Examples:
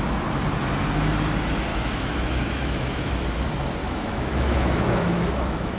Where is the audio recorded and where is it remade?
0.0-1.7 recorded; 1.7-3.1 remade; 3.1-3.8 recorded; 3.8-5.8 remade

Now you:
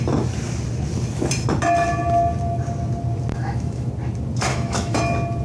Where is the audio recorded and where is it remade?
0.0-3.3 recorded; 3.3-3.9 remade; 3.9-4.5 recorded; 4.5-5.0 remade; 5.0-5.4 recorded

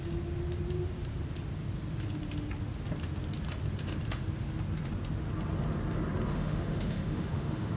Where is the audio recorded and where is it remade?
0.0-6.3 recorded; 6.3-7.8 remade

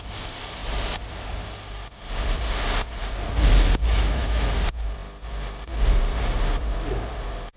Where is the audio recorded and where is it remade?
0.0-3.8 recorded; 3.8-4.5 remade; 4.5-7.6 recorded

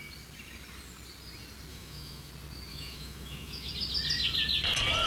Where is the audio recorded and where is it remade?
0.0-1.7 recorded; 1.7-2.3 remade; 2.3-2.7 recorded; 2.7-3.7 remade; 3.7-5.1 recorded

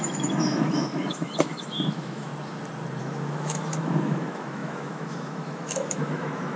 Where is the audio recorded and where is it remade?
0.0-2.3 remade; 2.3-3.0 recorded; 3.0-6.6 remade